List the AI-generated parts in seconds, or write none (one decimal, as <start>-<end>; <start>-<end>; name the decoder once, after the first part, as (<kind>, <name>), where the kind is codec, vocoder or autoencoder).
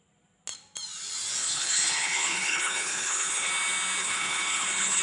1.4-3.5 (codec, HILCodec); 4.0-5.0